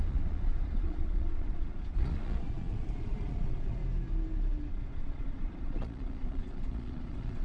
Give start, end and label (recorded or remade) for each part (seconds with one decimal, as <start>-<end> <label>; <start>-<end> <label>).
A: 0.0-3.8 remade; 3.8-4.7 recorded; 4.7-7.4 remade